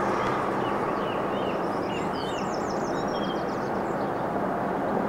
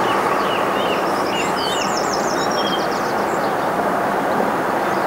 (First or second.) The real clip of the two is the first